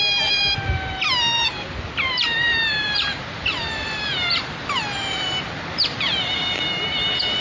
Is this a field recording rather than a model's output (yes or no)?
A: no